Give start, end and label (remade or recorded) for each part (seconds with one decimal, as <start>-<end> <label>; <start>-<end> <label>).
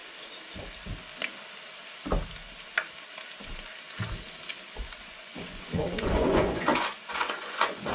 0.0-4.7 recorded; 4.7-7.9 remade